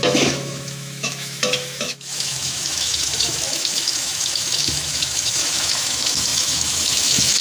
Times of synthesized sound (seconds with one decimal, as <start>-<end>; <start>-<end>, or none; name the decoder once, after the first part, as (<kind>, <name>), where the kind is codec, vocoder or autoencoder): 0.0-7.4 (autoencoder, DAC-VAE)